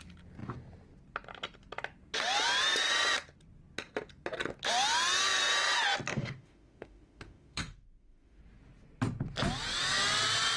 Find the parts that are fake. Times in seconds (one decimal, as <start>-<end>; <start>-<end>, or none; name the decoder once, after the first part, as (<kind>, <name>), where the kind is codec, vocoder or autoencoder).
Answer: 6.1-8.4 (autoencoder, DAC-VAE)